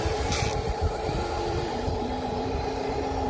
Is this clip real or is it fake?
fake